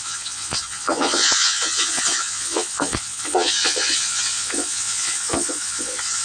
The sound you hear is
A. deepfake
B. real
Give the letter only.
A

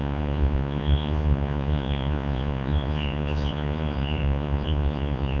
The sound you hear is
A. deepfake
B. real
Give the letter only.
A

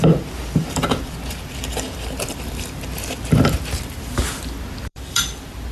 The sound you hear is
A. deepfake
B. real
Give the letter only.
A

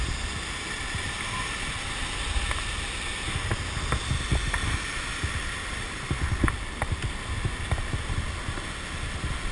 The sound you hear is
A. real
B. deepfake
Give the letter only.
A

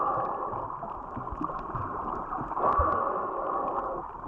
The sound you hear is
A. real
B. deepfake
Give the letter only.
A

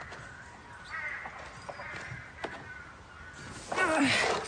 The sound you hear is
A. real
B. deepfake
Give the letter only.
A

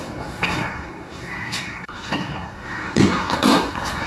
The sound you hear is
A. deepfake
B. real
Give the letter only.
A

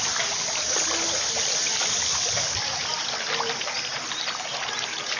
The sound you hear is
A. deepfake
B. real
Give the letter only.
B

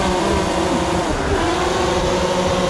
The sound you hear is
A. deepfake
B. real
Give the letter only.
B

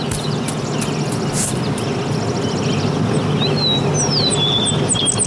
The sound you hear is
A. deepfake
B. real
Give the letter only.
B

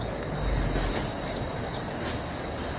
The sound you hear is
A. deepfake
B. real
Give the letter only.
B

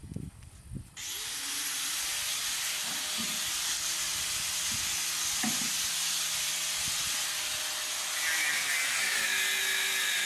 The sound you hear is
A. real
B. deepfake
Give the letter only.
A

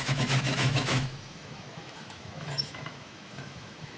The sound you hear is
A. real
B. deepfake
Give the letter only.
B